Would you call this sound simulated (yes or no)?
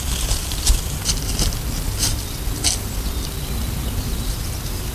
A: no